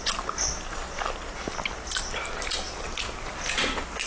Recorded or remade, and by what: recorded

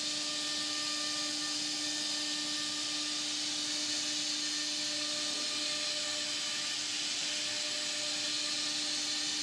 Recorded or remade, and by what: recorded